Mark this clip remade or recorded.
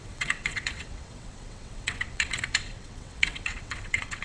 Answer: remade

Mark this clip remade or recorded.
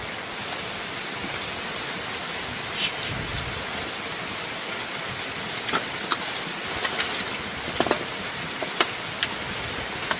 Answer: recorded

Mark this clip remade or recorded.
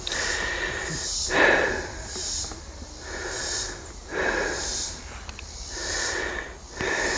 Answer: recorded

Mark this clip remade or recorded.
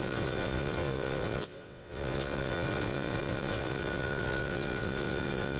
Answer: remade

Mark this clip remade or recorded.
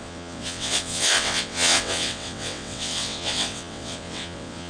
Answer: remade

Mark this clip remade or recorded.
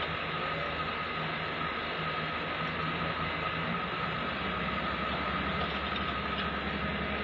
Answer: recorded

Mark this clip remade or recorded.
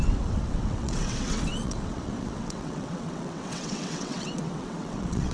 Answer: remade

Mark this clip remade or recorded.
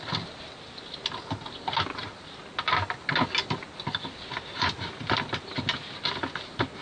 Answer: recorded